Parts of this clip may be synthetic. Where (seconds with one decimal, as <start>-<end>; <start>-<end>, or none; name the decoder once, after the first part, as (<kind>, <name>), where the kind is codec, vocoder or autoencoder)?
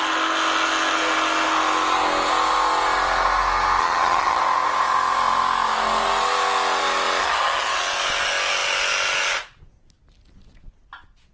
3.8-4.4 (vocoder, HiFi-GAN); 7.2-7.8